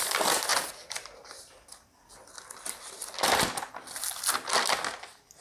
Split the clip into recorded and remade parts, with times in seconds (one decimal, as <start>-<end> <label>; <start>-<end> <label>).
0.0-5.4 recorded